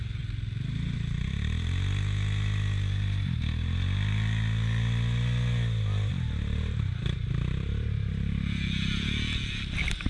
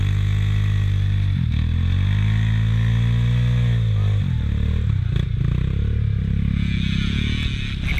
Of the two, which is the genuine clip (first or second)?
second